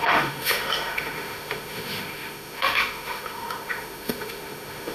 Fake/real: fake